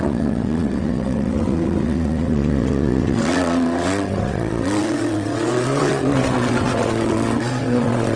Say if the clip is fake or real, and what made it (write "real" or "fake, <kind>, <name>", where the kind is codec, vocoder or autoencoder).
fake, vocoder, WaveNeXt